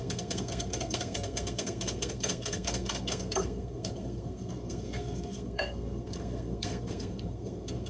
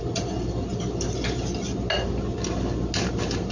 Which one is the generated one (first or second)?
first